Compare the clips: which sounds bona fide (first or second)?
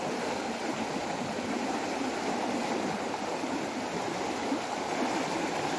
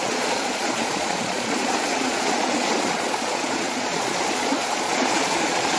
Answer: first